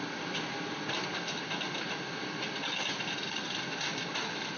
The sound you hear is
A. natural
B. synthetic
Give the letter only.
A